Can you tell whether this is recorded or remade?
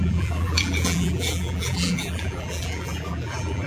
remade